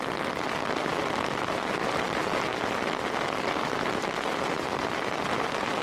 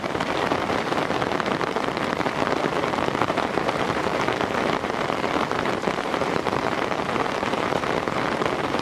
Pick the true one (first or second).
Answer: first